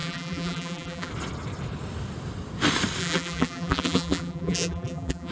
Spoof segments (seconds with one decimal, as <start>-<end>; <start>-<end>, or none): 0.0-1.1; 3.0-5.3

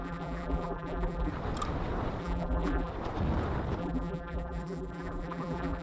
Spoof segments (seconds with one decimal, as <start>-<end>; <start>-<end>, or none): 0.0-1.3; 2.2-2.9; 3.8-5.8

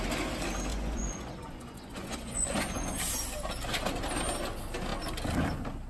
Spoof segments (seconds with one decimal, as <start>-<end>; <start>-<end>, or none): 0.7-2.9

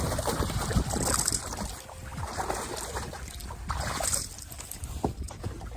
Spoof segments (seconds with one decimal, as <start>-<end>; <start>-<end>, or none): none